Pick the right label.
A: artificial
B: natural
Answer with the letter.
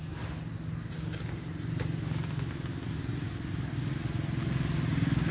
B